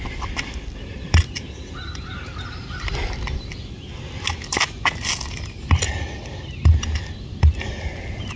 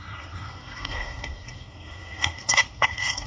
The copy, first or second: second